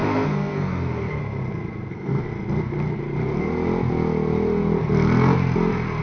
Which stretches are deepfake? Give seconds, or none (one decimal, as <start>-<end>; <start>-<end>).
0.0-1.2; 1.9-2.3